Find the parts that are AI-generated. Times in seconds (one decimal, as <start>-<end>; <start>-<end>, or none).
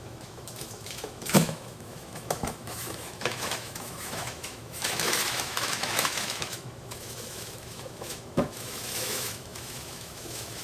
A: 0.0-10.6